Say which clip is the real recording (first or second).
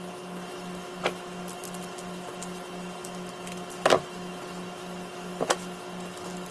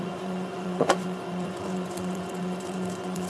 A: first